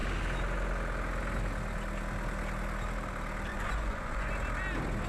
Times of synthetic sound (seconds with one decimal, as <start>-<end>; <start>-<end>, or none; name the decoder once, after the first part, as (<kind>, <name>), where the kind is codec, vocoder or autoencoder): 3.5-4.3 (vocoder, Vocos)